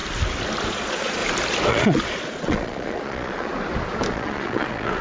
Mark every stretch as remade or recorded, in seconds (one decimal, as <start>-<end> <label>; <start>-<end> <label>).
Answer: 0.0-0.7 recorded; 0.7-1.2 remade; 1.2-1.7 recorded; 1.7-3.5 remade; 3.5-4.1 recorded; 4.1-5.0 remade